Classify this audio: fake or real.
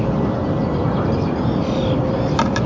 real